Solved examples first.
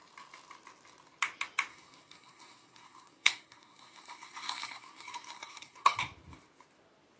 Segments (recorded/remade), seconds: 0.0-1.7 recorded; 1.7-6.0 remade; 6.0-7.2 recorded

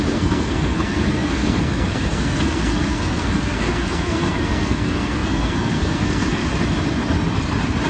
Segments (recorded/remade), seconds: 0.0-6.4 remade; 6.4-7.9 recorded

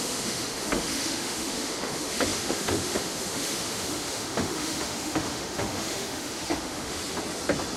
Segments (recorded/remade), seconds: 0.0-7.0 remade; 7.0-7.8 recorded